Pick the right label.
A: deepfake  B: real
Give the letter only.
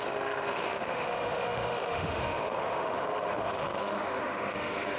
A